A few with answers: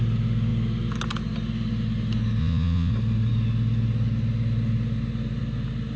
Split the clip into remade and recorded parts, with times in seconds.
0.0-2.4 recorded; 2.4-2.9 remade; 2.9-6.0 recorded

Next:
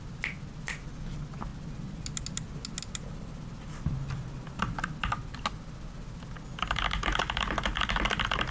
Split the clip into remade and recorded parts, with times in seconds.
0.0-8.5 recorded

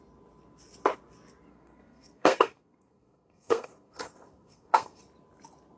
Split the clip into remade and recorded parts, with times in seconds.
0.0-1.5 recorded; 1.5-5.0 remade; 5.0-5.8 recorded

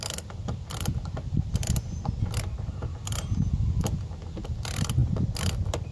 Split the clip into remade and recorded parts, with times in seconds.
0.0-1.6 remade; 1.6-4.6 recorded; 4.6-5.9 remade

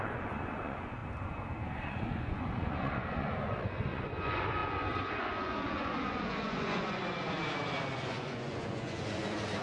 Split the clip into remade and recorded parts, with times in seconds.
0.0-1.0 remade; 1.0-1.6 recorded; 1.6-7.0 remade; 7.0-7.9 recorded; 7.9-9.6 remade

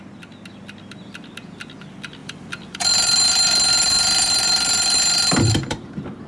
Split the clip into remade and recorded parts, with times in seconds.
0.0-2.2 recorded; 2.2-6.3 remade

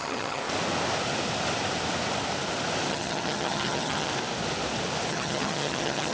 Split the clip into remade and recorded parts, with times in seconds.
0.0-0.4 remade; 0.4-2.9 recorded; 2.9-4.1 remade; 4.1-5.1 recorded; 5.1-6.1 remade

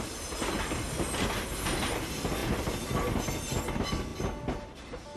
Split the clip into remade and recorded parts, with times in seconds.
0.0-5.2 recorded